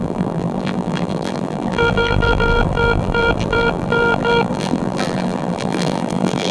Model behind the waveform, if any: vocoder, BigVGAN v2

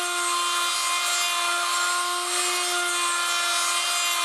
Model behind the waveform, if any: none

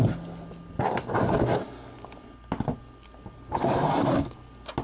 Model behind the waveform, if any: none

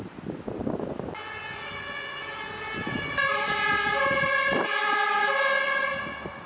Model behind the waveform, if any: none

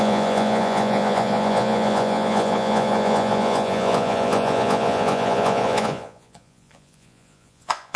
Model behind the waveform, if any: vocoder, Vocos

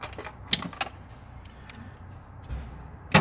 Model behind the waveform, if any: none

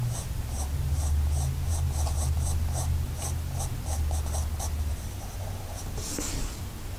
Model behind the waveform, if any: none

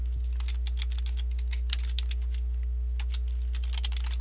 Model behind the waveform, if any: none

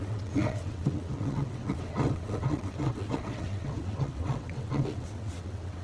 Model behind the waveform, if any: vocoder, WaveNeXt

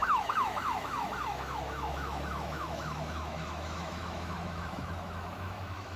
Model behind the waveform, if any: autoencoder, DAC-VAE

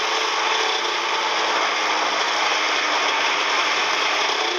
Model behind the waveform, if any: none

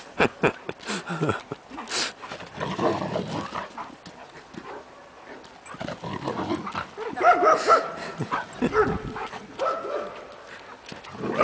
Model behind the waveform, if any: none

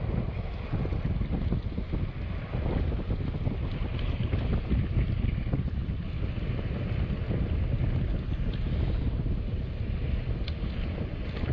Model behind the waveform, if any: none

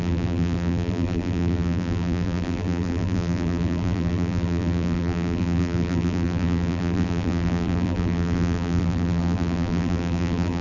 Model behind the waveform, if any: vocoder, BigVGAN v2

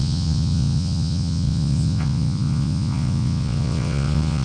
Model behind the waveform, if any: vocoder, Vocos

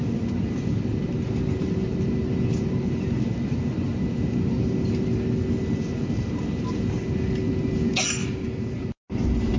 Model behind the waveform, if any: none